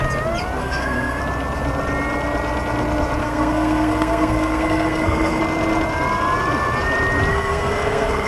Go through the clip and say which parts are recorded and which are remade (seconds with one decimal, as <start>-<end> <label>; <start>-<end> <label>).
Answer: 0.0-0.6 recorded; 0.6-1.2 remade; 1.2-3.2 recorded; 3.2-5.4 remade; 5.4-7.3 recorded; 7.3-8.3 remade

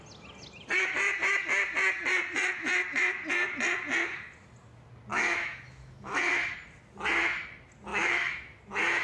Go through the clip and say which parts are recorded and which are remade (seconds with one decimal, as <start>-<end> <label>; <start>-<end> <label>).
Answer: 0.0-5.1 recorded; 5.1-6.5 remade; 6.5-7.9 recorded; 7.9-8.6 remade; 8.6-9.0 recorded

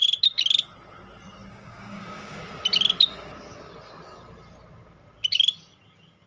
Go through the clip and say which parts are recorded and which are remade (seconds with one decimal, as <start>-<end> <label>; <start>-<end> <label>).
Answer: 0.0-1.5 recorded; 1.5-2.4 remade; 2.4-6.3 recorded

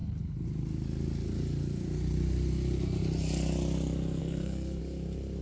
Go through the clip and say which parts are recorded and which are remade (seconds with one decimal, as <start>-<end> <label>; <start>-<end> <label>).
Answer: 0.0-4.2 recorded; 4.2-4.8 remade; 4.8-5.4 recorded

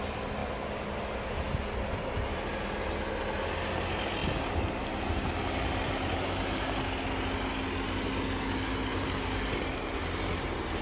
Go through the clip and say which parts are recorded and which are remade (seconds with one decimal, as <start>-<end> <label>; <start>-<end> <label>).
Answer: 0.0-10.8 recorded

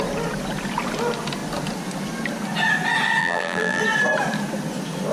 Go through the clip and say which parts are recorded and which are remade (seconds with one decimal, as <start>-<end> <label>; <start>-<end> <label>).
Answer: 0.0-3.2 recorded; 3.2-3.8 remade; 3.8-5.1 recorded

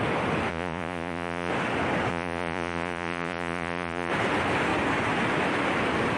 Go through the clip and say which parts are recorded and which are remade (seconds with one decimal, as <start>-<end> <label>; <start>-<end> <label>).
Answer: 0.0-0.5 recorded; 0.5-1.5 remade; 1.5-2.1 recorded; 2.1-4.1 remade; 4.1-6.2 recorded